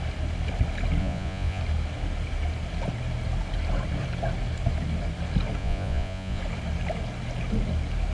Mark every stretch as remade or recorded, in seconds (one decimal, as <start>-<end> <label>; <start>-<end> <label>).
0.0-1.0 recorded; 1.0-1.6 remade; 1.6-5.6 recorded; 5.6-6.4 remade; 6.4-8.1 recorded